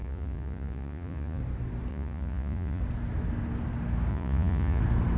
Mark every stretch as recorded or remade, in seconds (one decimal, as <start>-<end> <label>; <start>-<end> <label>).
0.0-1.4 remade; 1.4-1.9 recorded; 1.9-2.8 remade; 2.8-4.1 recorded; 4.1-4.8 remade; 4.8-5.2 recorded